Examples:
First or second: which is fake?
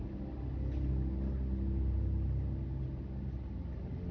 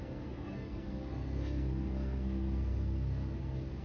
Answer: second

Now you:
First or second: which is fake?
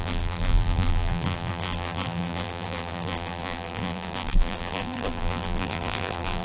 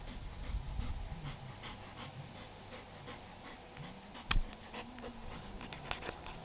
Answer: first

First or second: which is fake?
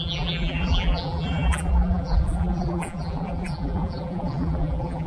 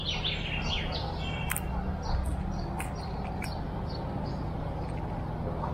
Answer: first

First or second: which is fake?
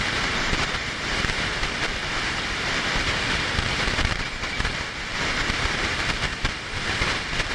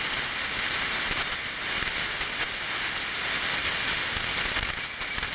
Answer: first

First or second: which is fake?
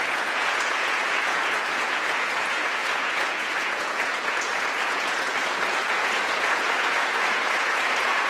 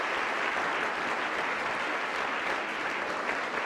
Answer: first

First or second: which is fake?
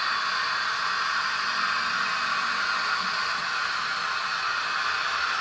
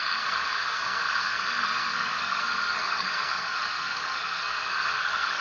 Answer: second